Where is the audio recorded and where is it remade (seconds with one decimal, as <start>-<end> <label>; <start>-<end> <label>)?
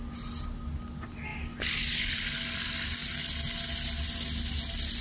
0.0-5.0 recorded